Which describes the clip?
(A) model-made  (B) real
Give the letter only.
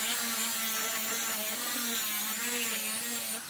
B